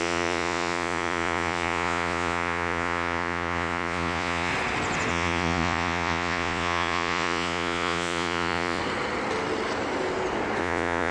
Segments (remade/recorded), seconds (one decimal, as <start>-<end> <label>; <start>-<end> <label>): 0.0-4.5 remade; 4.5-5.1 recorded; 5.1-8.8 remade; 8.8-10.6 recorded; 10.6-11.1 remade